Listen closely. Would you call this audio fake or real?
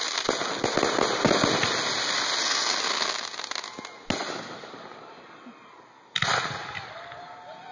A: real